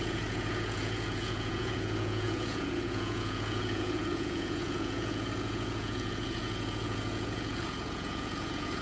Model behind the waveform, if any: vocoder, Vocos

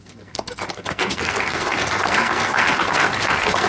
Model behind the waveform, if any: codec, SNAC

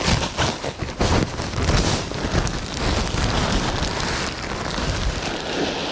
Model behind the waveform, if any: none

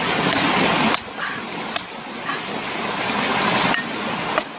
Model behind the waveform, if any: none